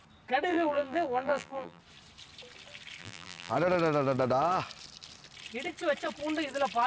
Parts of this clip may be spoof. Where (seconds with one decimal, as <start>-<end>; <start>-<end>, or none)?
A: 0.5-1.8; 3.0-3.5